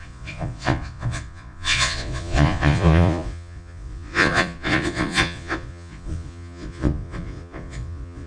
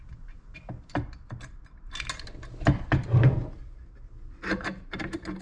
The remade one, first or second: first